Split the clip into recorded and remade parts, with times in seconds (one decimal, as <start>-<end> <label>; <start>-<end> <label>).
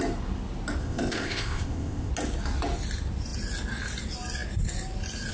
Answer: 0.0-0.8 recorded; 0.8-2.1 remade; 2.1-5.3 recorded